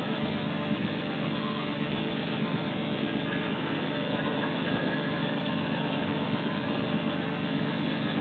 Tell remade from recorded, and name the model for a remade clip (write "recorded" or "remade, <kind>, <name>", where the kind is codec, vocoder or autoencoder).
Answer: remade, codec, SNAC